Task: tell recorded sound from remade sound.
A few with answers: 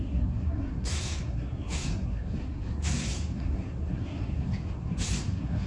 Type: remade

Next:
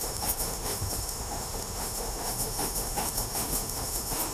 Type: remade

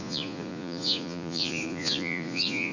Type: remade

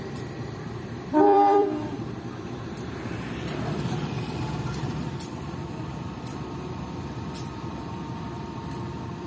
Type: remade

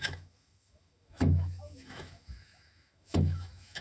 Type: remade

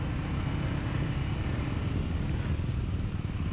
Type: remade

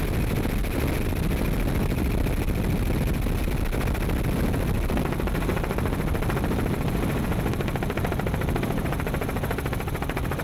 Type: recorded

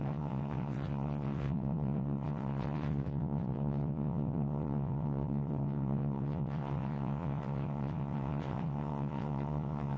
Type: remade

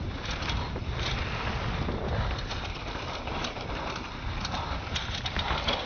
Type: recorded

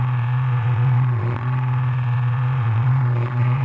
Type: remade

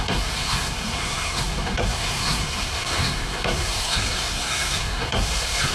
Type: remade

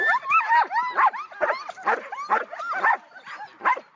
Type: recorded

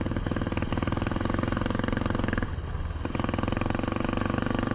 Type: recorded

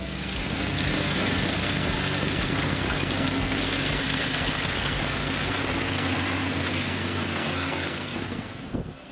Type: remade